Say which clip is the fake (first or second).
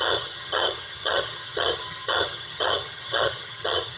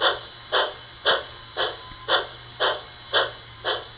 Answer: first